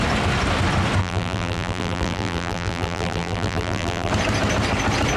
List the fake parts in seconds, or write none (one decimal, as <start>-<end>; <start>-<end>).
1.0-4.1